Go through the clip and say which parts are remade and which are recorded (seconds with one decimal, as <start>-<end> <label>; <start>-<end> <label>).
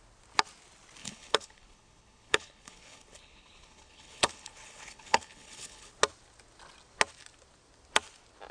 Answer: 0.0-1.0 recorded; 1.0-5.9 remade; 5.9-8.5 recorded